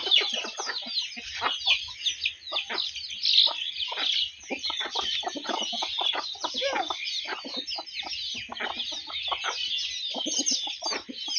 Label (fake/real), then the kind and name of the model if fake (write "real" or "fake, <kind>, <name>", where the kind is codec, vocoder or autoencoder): real